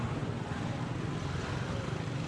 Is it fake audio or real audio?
real